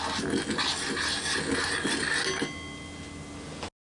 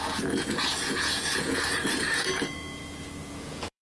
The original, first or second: first